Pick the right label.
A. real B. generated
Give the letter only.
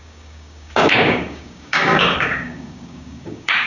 B